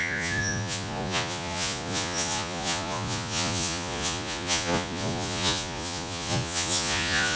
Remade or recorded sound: remade